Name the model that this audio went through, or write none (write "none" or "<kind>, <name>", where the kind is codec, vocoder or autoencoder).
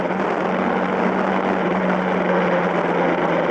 none